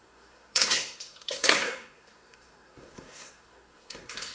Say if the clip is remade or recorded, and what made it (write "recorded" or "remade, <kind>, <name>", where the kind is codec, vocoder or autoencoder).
remade, codec, SNAC